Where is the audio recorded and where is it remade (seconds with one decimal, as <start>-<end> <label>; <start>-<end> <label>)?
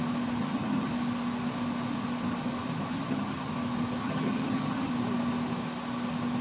0.0-0.4 recorded; 0.4-0.9 remade; 0.9-2.9 recorded; 2.9-3.5 remade; 3.5-4.0 recorded; 4.0-4.9 remade; 4.9-6.4 recorded